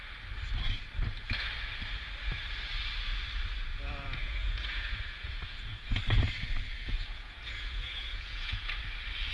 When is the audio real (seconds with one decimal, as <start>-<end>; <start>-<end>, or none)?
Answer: 0.0-4.2; 6.0-6.8; 8.7-9.3

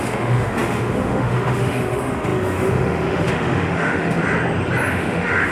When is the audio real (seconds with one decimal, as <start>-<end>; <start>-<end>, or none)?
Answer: 4.2-4.9

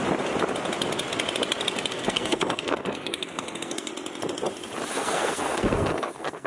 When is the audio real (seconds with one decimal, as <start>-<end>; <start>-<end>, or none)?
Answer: 0.0-1.9; 3.9-4.9

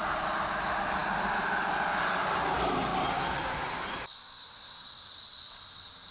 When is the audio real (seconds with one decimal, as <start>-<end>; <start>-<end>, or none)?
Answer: 0.0-6.1

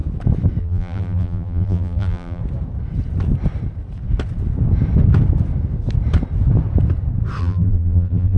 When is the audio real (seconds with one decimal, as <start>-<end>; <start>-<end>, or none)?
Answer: 0.0-0.6; 2.4-7.4

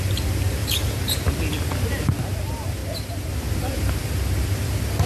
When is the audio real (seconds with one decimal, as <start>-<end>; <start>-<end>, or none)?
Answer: 0.0-2.8; 3.3-5.1

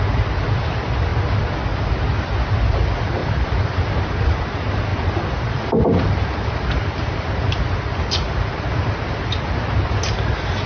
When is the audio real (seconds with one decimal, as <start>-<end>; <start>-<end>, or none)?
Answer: 0.0-3.2; 4.2-4.9; 9.2-10.7